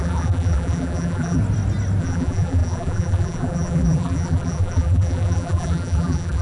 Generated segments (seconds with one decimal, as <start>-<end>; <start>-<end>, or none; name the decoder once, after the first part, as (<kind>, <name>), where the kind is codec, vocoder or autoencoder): 0.0-1.4 (vocoder, BigVGAN v2); 2.0-6.4